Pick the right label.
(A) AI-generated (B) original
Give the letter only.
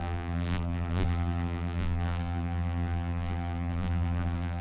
A